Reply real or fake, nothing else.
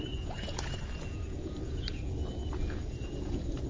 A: fake